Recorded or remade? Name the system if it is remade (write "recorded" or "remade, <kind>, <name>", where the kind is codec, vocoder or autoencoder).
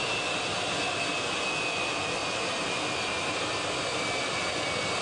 recorded